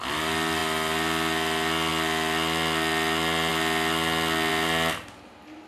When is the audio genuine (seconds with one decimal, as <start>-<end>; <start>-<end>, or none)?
0.0-5.7